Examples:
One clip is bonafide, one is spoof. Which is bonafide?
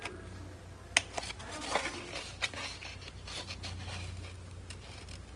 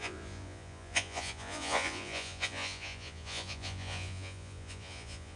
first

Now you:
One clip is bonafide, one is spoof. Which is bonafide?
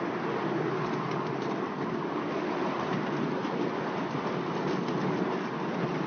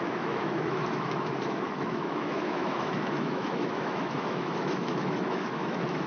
first